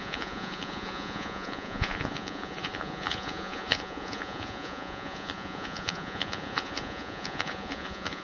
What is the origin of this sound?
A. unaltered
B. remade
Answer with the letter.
B